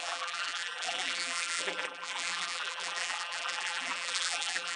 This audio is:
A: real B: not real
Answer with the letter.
B